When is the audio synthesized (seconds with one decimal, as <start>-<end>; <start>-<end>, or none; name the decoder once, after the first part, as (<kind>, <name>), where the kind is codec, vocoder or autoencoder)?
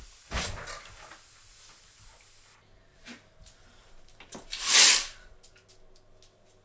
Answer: 2.9-5.7 (vocoder, BigVGAN v2)